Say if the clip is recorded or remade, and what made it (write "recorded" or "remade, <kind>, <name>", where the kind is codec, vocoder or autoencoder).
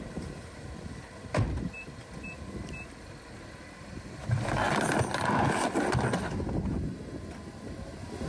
recorded